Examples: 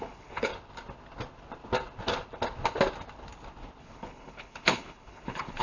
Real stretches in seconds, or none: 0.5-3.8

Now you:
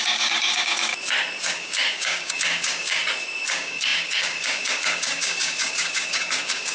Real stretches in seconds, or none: 0.9-1.4; 3.0-3.5

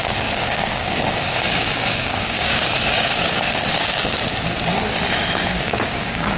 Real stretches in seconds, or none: 4.2-5.5

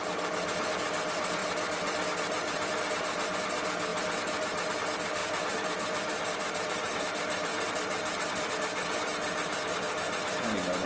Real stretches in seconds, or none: 0.0-1.4; 2.9-5.2; 8.5-10.9

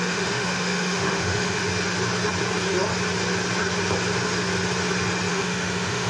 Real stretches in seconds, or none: 1.6-5.3

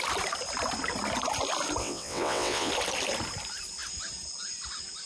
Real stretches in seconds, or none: 0.0-1.8; 2.7-5.1

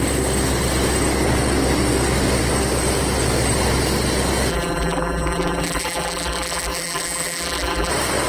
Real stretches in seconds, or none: 0.0-4.5; 7.9-8.3